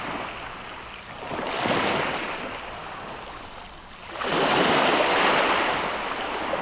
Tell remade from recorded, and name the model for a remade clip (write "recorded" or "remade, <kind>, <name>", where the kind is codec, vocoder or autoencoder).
recorded